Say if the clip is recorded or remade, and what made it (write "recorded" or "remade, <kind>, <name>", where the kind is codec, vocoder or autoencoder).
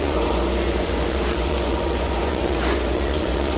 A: remade, vocoder, Vocos